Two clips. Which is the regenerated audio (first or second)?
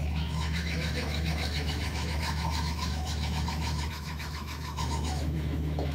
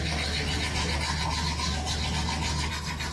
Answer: first